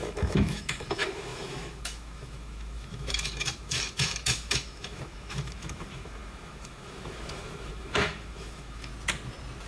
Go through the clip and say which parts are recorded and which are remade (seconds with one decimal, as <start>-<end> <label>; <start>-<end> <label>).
0.0-8.9 remade; 8.9-9.7 recorded